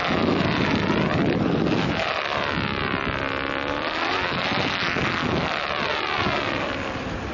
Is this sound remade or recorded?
recorded